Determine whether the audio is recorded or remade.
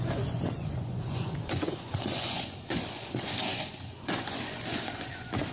remade